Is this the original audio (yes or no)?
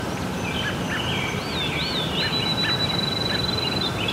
yes